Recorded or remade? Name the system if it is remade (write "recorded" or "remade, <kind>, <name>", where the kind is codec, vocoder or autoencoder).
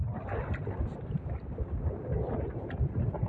recorded